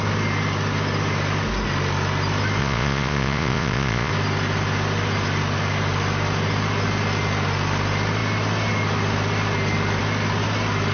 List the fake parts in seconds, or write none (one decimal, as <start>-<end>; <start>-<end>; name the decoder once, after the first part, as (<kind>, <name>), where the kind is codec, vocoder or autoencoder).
2.6-4.1 (vocoder, Vocos)